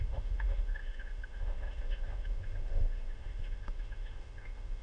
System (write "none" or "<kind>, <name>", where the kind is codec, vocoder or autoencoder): autoencoder, DAC-VAE